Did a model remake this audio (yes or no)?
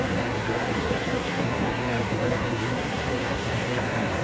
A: yes